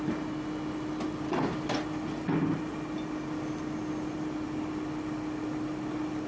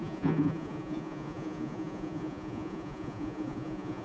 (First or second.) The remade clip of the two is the second